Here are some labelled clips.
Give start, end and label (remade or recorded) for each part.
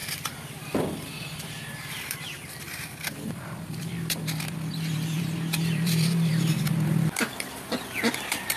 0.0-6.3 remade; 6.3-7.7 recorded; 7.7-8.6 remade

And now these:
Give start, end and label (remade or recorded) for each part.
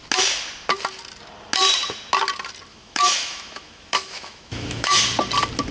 0.0-2.7 recorded; 2.7-5.0 remade; 5.0-5.7 recorded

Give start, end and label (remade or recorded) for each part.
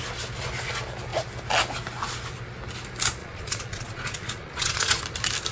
0.0-3.2 recorded; 3.2-5.0 remade; 5.0-5.5 recorded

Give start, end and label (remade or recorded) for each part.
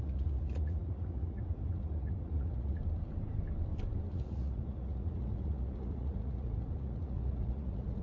0.0-2.8 remade; 2.8-4.1 recorded; 4.1-8.0 remade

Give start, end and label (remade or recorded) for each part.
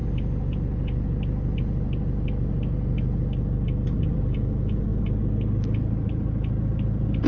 0.0-7.3 recorded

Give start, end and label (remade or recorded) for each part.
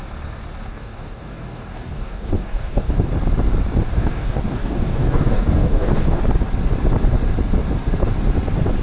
0.0-0.7 recorded; 0.7-3.1 remade; 3.1-3.9 recorded; 3.9-6.2 remade; 6.2-8.8 recorded